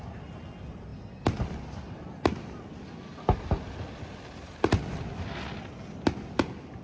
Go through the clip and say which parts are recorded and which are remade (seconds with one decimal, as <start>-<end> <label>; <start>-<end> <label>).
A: 0.0-6.8 recorded